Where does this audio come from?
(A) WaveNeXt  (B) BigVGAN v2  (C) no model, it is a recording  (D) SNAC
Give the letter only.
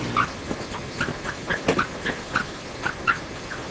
C